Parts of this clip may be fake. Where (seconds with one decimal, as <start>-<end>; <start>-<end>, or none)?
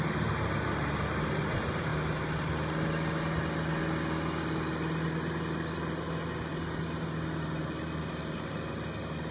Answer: none